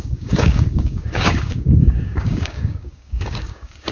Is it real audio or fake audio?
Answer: fake